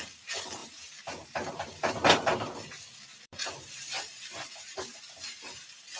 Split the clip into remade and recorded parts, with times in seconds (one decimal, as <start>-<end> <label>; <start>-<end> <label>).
0.0-0.6 recorded; 0.6-2.5 remade; 2.5-3.1 recorded; 3.1-5.0 remade; 5.0-6.0 recorded

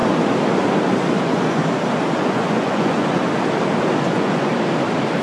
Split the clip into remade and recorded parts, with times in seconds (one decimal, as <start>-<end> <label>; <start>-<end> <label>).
0.0-1.2 recorded; 1.2-1.6 remade; 1.6-2.2 recorded; 2.2-3.2 remade; 3.2-4.0 recorded; 4.0-4.5 remade; 4.5-5.2 recorded

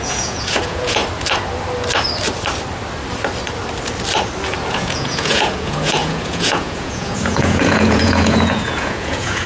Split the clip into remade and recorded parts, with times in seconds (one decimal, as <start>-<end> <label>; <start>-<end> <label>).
0.0-1.0 remade; 1.0-4.7 recorded; 4.7-9.5 remade